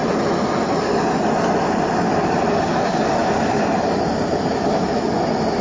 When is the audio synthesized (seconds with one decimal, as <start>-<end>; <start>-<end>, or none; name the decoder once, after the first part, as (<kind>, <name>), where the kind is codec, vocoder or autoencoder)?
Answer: none